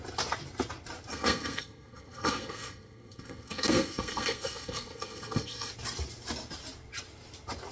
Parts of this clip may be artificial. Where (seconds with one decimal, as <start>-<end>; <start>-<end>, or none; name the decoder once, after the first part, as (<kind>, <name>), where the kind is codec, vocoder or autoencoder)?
1.1-5.7 (codec, SNAC)